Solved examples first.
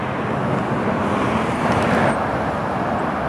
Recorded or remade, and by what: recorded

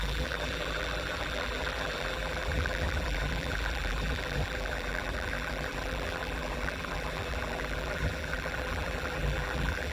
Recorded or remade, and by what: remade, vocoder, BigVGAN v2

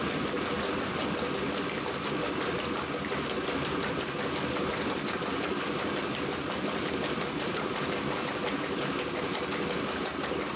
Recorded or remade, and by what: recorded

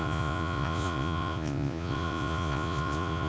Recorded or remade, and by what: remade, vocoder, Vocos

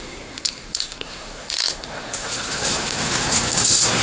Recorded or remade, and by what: remade, codec, SNAC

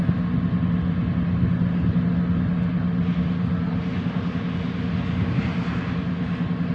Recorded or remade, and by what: recorded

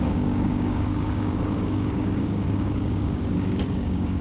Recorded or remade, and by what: remade, codec, DAC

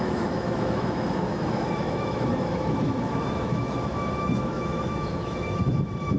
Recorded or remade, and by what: remade, autoencoder, DAC-VAE